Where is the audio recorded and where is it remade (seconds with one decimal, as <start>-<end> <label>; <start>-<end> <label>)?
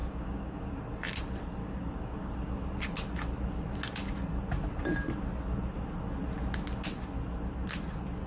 0.0-0.6 remade; 0.6-1.6 recorded; 1.6-2.3 remade; 2.3-8.3 recorded